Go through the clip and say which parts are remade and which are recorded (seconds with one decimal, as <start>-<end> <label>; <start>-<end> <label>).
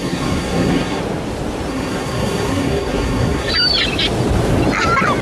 0.0-1.0 remade; 1.0-1.7 recorded; 1.7-3.5 remade; 3.5-5.2 recorded